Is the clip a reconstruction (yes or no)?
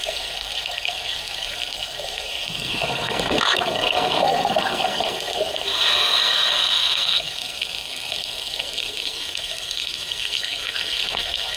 yes